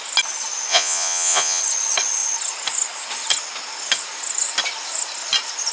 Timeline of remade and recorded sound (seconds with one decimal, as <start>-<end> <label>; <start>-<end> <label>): 0.0-0.7 recorded; 0.7-1.6 remade; 1.6-5.7 recorded